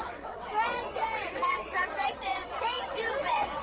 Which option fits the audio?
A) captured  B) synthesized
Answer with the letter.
B